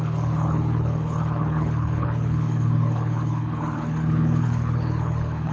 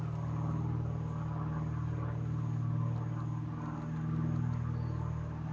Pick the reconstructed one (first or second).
first